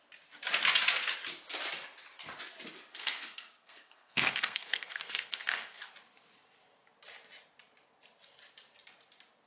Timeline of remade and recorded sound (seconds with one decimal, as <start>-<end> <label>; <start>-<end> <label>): 0.0-2.9 recorded; 2.9-5.9 remade; 5.9-9.5 recorded